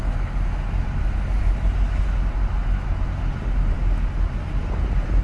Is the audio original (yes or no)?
yes